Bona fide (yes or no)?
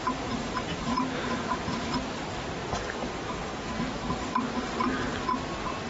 yes